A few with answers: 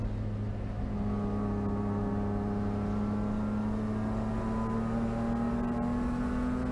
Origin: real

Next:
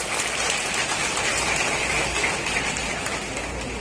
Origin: real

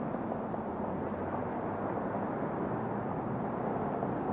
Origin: real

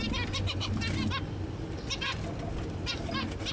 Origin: real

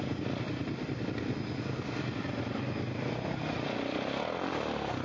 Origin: real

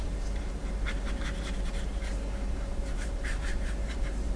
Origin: fake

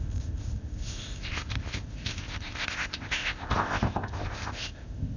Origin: fake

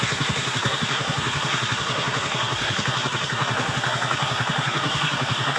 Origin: fake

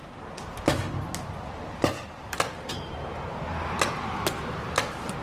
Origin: real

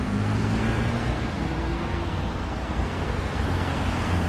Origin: fake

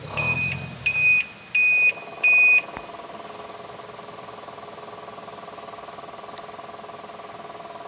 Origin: real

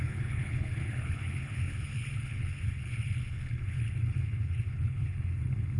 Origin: fake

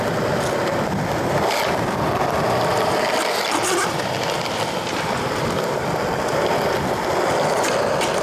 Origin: real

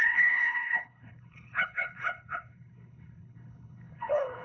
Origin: fake